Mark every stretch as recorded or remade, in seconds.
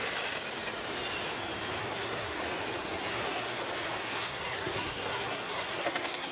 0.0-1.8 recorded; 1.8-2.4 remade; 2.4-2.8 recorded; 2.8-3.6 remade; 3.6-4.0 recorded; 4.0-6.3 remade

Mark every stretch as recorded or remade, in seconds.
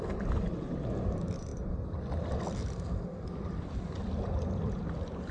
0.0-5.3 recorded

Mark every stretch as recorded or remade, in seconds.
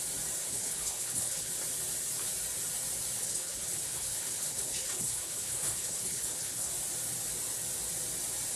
0.0-0.4 recorded; 0.4-1.5 remade; 1.5-3.2 recorded; 3.2-6.7 remade; 6.7-8.6 recorded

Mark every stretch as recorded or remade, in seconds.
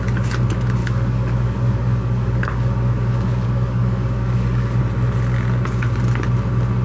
0.0-0.8 recorded; 0.8-4.8 remade; 4.8-6.8 recorded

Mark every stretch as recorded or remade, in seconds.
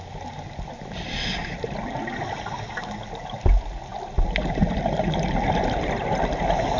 0.0-6.8 recorded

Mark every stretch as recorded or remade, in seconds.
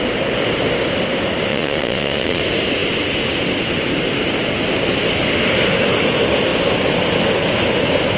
0.0-1.5 recorded; 1.5-2.4 remade; 2.4-8.2 recorded